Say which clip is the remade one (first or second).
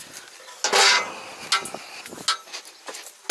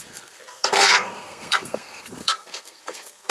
second